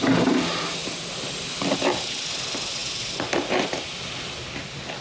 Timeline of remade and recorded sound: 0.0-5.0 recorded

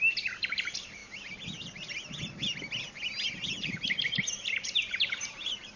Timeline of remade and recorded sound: 0.0-1.0 remade; 1.0-4.5 recorded; 4.5-5.8 remade

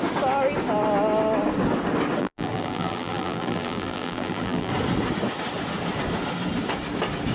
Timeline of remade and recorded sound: 0.0-2.2 recorded; 2.2-4.7 remade; 4.7-7.3 recorded

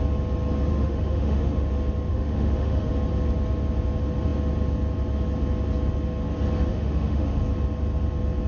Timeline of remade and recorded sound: 0.0-0.7 recorded; 0.7-1.7 remade; 1.7-2.1 recorded; 2.1-2.9 remade; 2.9-6.7 recorded; 6.7-7.4 remade; 7.4-8.5 recorded

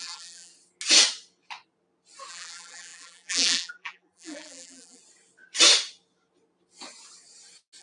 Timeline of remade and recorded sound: 0.0-0.5 remade; 0.5-2.3 recorded; 2.3-5.0 remade; 5.0-7.8 recorded